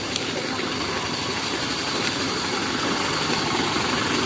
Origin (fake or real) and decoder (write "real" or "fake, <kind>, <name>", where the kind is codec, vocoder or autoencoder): real